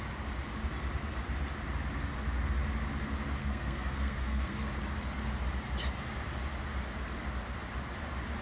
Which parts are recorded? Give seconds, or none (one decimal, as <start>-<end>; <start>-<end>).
0.0-3.4; 4.7-8.4